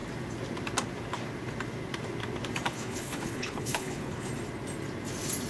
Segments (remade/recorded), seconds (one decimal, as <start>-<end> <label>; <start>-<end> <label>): 0.0-2.7 recorded; 2.7-4.3 remade; 4.3-5.5 recorded